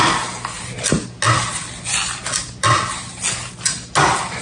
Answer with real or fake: real